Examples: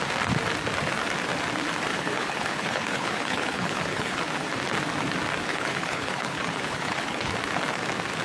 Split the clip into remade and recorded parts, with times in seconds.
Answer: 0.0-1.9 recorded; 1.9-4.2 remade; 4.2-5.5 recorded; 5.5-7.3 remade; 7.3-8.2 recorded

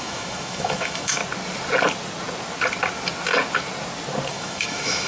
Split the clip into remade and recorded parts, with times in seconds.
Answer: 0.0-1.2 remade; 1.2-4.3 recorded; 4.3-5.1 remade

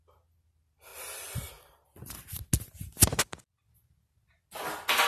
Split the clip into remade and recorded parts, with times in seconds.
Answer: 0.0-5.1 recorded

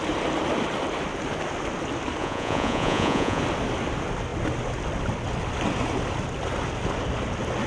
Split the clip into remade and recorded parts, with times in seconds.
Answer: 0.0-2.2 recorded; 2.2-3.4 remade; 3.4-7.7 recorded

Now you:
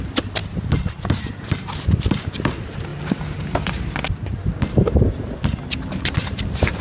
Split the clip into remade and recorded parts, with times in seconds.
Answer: 0.0-6.8 recorded